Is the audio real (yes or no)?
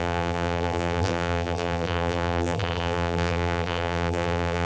no